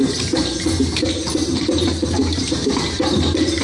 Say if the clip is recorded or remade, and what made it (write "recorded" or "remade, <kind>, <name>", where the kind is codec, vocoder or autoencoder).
remade, vocoder, BigVGAN v2